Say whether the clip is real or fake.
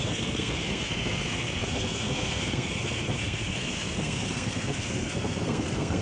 fake